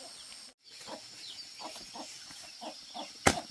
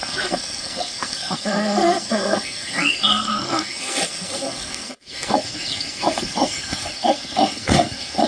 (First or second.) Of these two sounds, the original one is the first